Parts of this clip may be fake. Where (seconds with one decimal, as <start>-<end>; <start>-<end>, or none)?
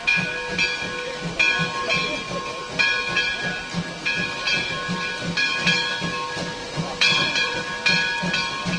6.6-7.6